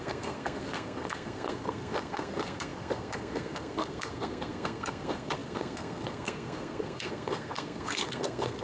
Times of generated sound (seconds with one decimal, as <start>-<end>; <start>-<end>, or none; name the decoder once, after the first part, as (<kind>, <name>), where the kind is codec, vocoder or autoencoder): 0.0-8.6 (codec, SNAC)